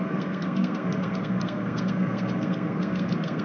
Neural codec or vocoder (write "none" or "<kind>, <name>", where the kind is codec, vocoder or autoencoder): codec, SNAC